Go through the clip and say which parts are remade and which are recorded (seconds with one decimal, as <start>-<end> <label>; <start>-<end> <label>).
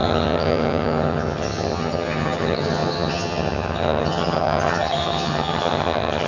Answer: 0.0-6.3 remade